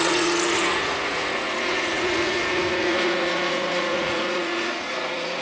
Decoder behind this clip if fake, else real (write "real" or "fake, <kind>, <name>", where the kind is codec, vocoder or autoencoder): fake, vocoder, Vocos